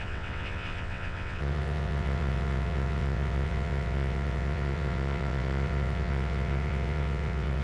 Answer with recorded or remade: remade